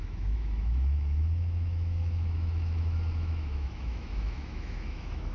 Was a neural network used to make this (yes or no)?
yes